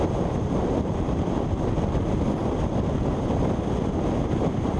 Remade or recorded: recorded